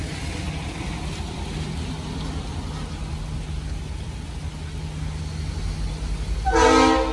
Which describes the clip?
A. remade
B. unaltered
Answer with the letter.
B